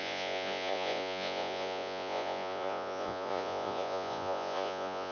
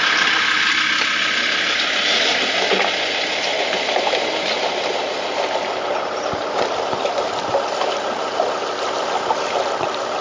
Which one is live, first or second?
second